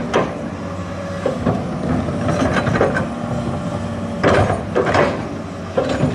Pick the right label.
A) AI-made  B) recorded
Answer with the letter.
B